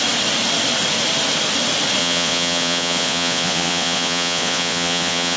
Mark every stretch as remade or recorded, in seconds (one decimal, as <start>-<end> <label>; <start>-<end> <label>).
0.0-2.0 recorded; 2.0-5.4 remade